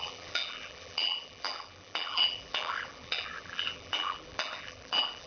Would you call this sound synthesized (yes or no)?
yes